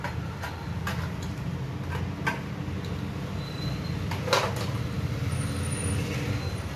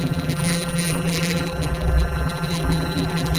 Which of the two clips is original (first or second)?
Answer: first